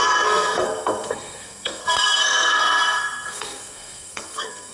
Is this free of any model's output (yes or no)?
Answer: no